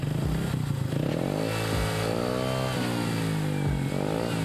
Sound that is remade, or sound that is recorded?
recorded